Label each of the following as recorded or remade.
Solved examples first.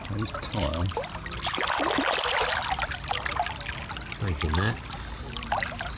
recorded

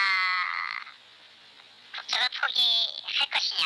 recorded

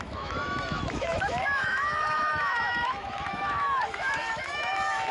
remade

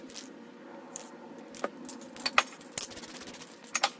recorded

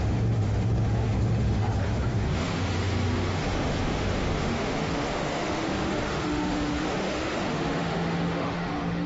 remade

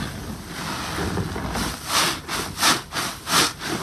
recorded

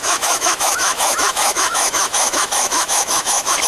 remade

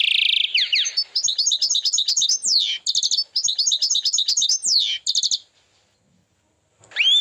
recorded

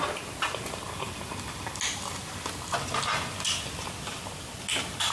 recorded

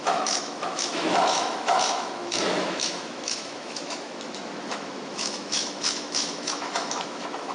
remade